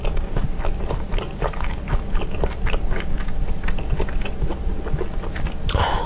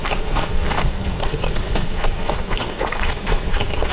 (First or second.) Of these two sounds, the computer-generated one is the second